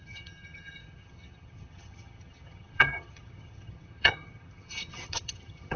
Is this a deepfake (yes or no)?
yes